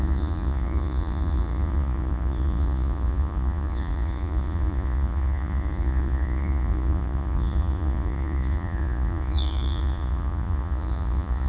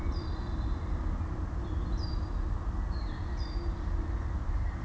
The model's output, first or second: first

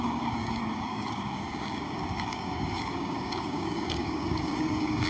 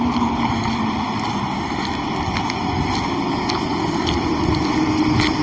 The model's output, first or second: first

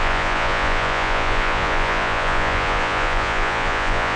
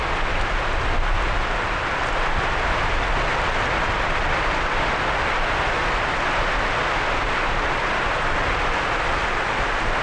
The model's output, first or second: first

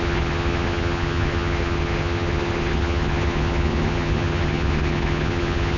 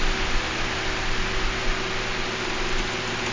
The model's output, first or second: first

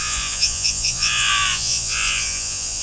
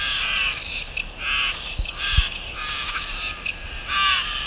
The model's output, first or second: first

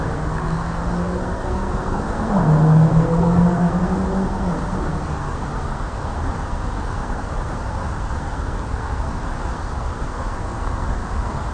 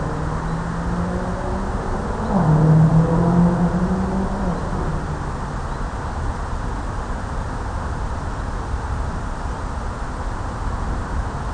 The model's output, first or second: first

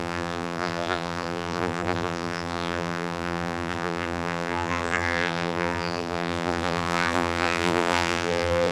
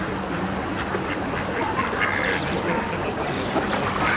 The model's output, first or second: first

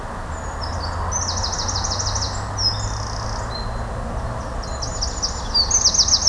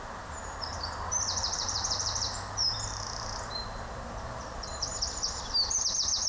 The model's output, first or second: second